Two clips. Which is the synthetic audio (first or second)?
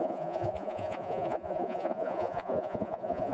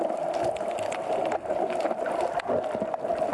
first